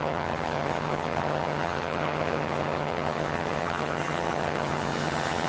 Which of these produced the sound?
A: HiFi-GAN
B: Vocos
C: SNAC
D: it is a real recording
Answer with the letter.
A